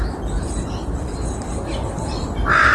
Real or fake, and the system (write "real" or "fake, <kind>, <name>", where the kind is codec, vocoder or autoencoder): real